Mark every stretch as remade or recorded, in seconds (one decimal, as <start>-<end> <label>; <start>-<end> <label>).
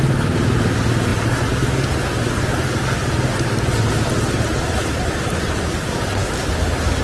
0.0-7.0 recorded